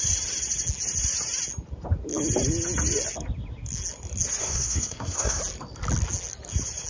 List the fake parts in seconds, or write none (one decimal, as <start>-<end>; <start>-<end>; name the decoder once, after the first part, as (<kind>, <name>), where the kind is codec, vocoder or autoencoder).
4.4-5.4 (codec, SNAC)